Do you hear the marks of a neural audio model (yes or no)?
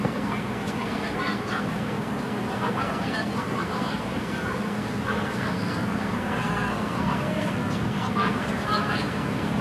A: yes